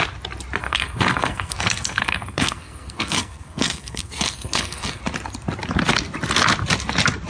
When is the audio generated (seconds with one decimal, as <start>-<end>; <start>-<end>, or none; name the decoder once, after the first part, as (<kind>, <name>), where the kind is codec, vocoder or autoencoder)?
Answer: 0.6-5.0 (codec, SNAC)